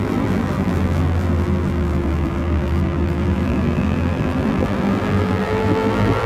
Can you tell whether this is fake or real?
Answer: fake